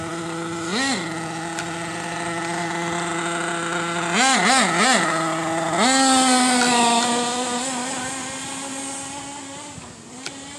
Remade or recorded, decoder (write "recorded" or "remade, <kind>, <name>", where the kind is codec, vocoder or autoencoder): recorded